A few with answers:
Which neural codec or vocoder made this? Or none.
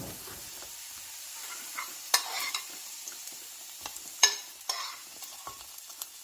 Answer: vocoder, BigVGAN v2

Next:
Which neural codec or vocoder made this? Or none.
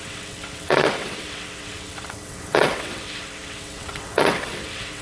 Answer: vocoder, WaveNeXt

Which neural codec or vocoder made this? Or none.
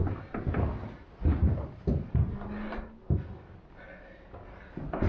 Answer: none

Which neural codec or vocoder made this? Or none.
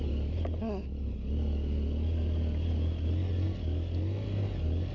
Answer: none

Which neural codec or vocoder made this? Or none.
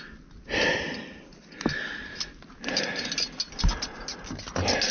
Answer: none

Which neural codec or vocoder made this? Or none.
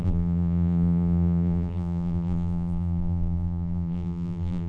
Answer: vocoder, BigVGAN v2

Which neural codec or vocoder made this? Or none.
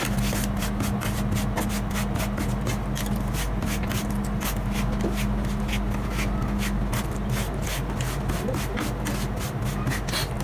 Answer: none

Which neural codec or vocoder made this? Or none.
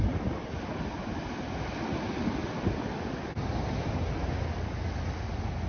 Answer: none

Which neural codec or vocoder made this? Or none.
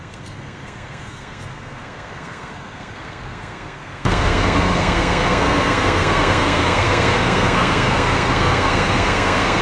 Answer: codec, SNAC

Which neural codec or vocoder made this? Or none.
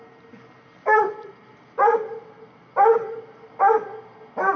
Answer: none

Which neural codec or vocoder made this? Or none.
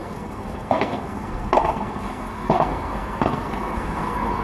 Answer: codec, SNAC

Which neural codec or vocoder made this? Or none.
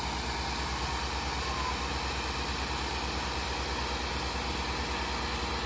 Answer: none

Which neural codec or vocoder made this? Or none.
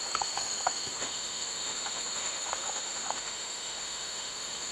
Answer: autoencoder, DAC-VAE